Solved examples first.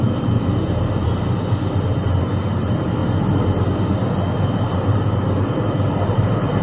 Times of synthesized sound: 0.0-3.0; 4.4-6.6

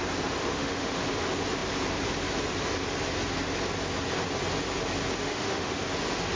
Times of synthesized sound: 0.4-1.0; 5.2-5.7